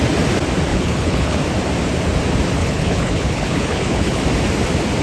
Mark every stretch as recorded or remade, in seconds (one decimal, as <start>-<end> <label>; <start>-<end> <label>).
0.0-0.7 recorded; 0.7-1.4 remade; 1.4-2.6 recorded; 2.6-4.2 remade; 4.2-5.0 recorded